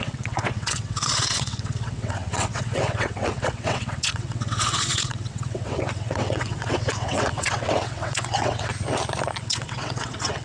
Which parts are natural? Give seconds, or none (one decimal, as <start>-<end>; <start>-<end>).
8.7-9.4